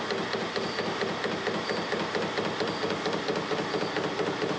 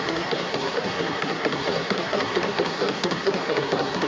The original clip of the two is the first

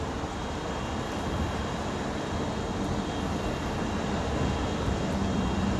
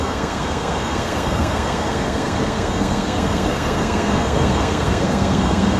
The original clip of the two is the first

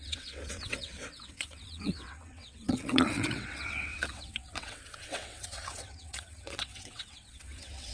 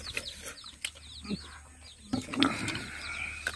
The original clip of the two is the second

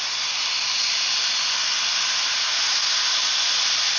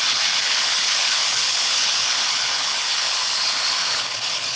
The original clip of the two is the first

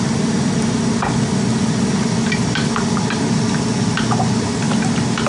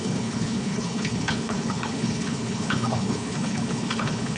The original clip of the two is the first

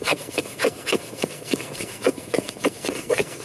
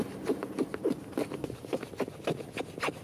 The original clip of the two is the second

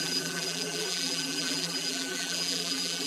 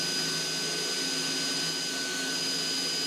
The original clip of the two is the second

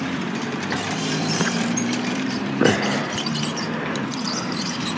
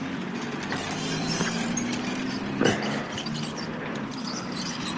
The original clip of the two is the second